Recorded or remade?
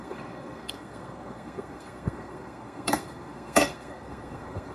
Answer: remade